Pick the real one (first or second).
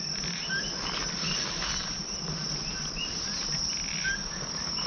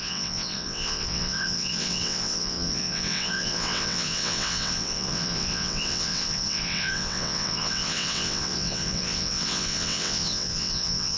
first